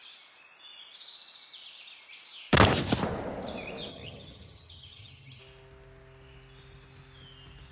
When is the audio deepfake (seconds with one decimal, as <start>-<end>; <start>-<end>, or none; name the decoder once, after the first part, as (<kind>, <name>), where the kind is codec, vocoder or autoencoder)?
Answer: 3.9-5.4 (vocoder, HiFi-GAN)